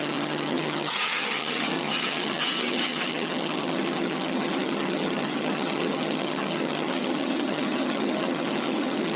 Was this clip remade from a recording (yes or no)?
yes